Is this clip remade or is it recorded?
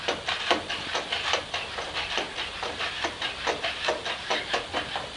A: recorded